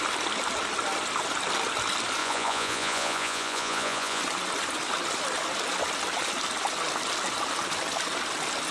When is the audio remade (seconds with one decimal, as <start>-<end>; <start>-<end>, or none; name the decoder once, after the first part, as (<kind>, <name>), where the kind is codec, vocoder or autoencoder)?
2.2-4.2 (vocoder, Vocos)